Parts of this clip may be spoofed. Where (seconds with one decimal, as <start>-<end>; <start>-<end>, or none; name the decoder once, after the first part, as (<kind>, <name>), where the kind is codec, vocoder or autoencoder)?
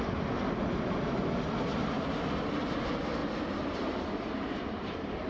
none